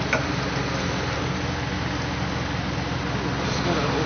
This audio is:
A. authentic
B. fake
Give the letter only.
A